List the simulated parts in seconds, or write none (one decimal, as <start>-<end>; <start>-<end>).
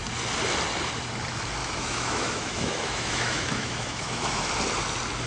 1.6-4.5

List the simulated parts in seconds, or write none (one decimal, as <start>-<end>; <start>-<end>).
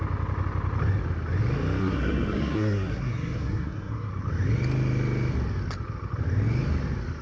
1.8-4.1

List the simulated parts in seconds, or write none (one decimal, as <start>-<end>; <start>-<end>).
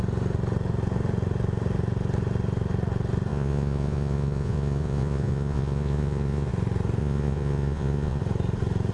3.3-6.5; 7.0-8.2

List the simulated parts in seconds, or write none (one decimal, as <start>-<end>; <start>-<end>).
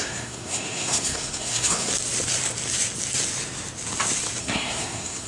0.0-1.9; 4.4-5.3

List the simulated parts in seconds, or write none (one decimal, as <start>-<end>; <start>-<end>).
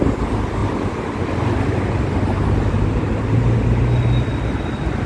none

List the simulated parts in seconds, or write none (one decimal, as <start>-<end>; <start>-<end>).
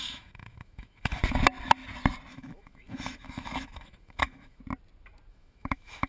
0.0-1.2; 2.3-4.6; 5.3-6.1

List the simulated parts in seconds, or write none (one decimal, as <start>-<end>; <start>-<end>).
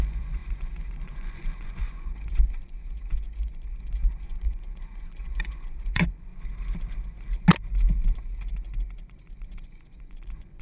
0.0-6.3; 9.3-10.6